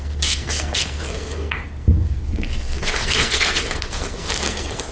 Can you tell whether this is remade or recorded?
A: remade